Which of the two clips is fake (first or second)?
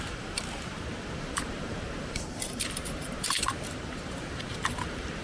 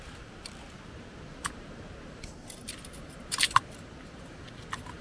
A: first